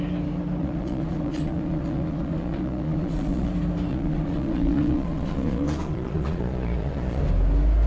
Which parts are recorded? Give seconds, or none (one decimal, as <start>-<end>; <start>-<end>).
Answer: 0.0-0.6; 3.5-3.9; 7.2-7.9

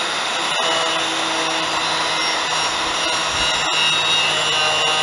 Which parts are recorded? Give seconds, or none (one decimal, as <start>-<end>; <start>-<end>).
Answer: 0.0-5.0

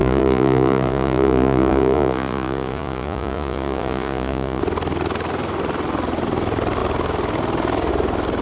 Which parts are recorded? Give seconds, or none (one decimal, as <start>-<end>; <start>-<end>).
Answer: 4.6-8.4

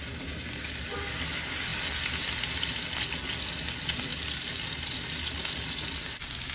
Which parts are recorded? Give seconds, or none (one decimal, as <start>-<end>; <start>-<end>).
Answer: 0.0-6.5

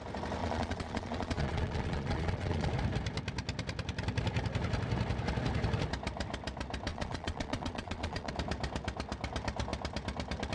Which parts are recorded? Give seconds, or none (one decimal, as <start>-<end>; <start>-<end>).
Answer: 0.0-0.4; 2.7-6.9; 8.3-10.5

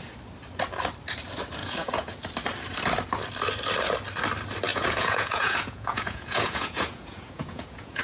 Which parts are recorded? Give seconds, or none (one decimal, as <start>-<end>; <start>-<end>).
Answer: 0.0-1.6; 2.1-4.7

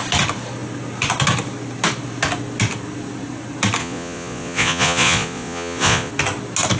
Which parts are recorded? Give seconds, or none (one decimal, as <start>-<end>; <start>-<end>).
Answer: 0.0-3.8; 6.1-6.8